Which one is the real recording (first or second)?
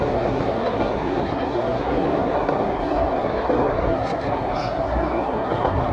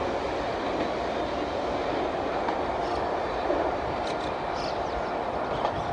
second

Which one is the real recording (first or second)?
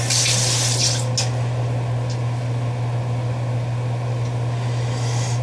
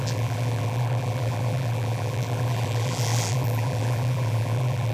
first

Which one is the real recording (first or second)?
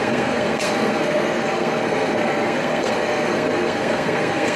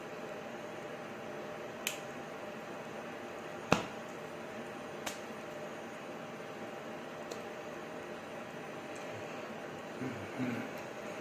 second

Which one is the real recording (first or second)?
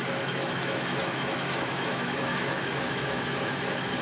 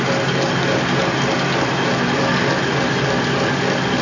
second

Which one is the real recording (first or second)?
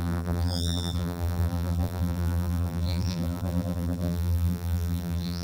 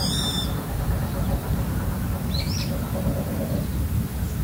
second